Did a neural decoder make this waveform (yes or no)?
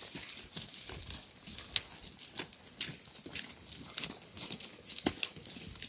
no